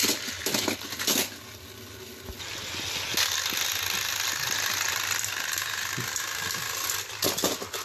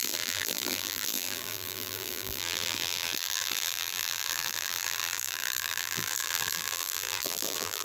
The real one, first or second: first